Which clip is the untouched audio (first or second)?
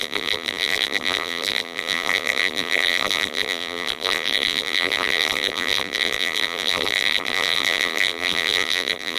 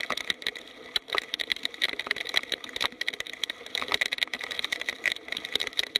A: second